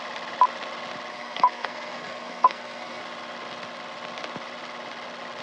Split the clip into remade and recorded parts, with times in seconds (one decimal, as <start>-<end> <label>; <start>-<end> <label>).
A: 0.0-1.1 recorded; 1.1-3.0 remade; 3.0-5.4 recorded